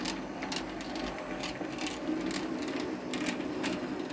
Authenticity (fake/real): real